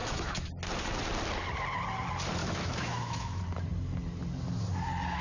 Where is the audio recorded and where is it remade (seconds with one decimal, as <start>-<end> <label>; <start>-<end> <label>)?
0.0-0.5 remade; 0.5-2.4 recorded; 2.4-3.4 remade; 3.4-5.2 recorded